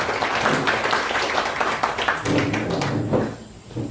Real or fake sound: real